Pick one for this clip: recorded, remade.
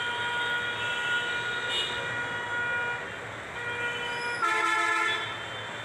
recorded